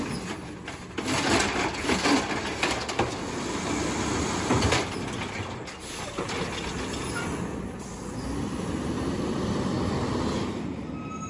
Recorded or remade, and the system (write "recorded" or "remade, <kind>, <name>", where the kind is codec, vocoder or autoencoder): recorded